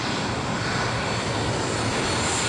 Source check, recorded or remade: recorded